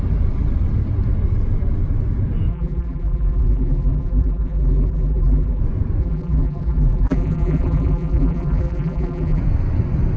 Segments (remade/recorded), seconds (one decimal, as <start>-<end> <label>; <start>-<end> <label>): 0.0-2.5 recorded; 2.5-5.6 remade; 5.6-6.0 recorded; 6.0-9.4 remade; 9.4-10.2 recorded